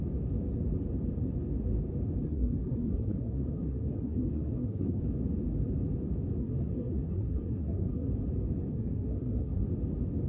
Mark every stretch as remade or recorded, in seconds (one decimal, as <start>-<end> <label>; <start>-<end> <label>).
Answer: 0.0-2.2 recorded; 2.2-5.0 remade; 5.0-6.4 recorded; 6.4-8.1 remade; 8.1-8.7 recorded; 8.7-9.7 remade; 9.7-10.3 recorded